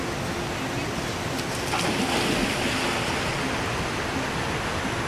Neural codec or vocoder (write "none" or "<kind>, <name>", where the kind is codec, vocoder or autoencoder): none